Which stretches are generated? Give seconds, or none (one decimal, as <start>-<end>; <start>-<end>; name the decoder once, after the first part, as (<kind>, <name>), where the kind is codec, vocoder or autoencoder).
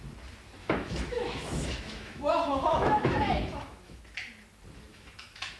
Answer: 0.6-4.0 (autoencoder, DAC-VAE); 4.9-5.6